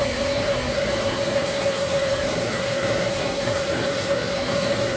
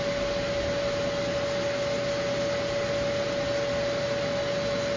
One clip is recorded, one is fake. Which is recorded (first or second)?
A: second